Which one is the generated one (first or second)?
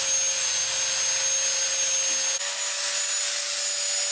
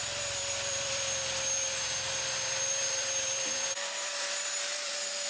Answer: second